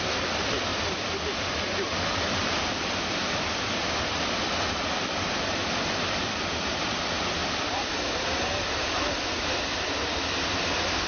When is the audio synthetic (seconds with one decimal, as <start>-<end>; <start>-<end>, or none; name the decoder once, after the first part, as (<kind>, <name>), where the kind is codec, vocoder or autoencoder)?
0.7-4.0 (vocoder, BigVGAN v2); 7.4-10.1